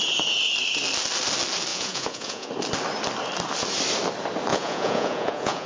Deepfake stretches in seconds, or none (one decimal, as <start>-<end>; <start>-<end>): 1.7-2.5; 4.5-5.7